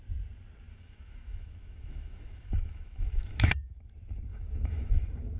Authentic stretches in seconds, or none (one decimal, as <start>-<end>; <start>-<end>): 0.0-0.7; 3.5-4.3; 4.9-5.4